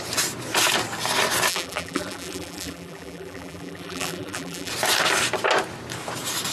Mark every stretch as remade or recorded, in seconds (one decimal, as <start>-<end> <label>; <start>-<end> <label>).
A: 0.0-1.5 recorded; 1.5-4.7 remade; 4.7-6.5 recorded